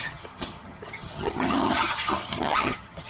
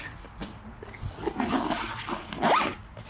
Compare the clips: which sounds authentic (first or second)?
second